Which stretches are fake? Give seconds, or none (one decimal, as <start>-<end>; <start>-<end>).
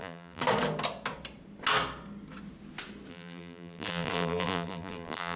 0.0-0.4; 3.1-5.4